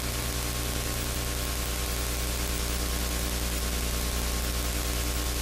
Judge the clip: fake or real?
real